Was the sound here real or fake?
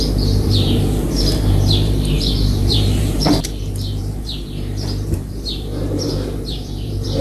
fake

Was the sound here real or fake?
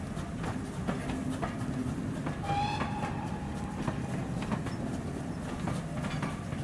real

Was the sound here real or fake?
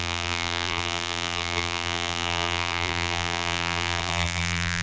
fake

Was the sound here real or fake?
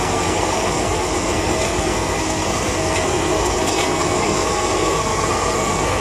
fake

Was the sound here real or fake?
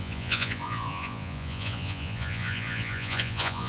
fake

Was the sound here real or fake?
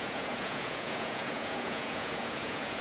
fake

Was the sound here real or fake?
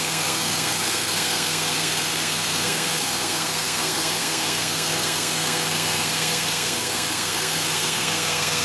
fake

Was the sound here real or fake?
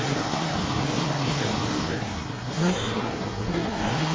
fake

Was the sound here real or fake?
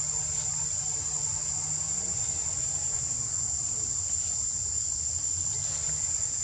real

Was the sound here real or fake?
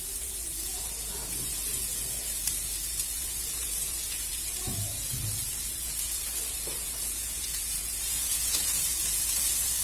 fake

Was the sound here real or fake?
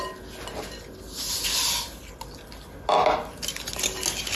real